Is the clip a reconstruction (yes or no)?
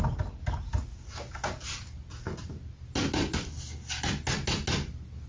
no